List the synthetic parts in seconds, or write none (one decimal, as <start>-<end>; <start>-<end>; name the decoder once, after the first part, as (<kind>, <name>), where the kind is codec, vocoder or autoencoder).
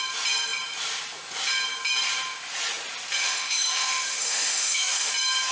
3.2-5.1 (autoencoder, DAC-VAE)